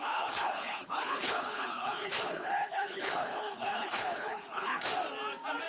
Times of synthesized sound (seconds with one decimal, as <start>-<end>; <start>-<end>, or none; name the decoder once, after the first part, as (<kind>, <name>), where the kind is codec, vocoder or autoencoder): 0.0-4.9 (codec, HILCodec)